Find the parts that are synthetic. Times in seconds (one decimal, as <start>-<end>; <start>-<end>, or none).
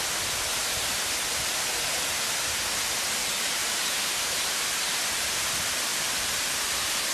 0.5-1.0; 3.6-5.4; 5.9-6.6